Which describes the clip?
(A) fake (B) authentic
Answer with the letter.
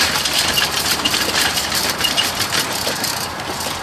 A